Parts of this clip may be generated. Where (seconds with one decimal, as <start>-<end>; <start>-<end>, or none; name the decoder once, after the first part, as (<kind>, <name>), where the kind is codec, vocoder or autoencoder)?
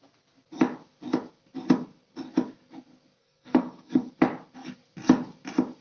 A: 3.2-4.1 (codec, SNAC)